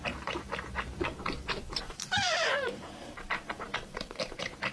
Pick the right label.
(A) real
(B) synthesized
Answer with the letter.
B